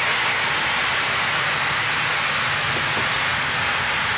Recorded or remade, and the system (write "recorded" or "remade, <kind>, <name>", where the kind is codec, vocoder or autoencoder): recorded